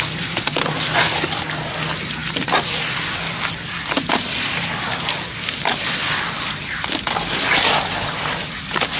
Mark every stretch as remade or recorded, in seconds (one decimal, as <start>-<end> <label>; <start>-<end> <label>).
0.0-9.0 recorded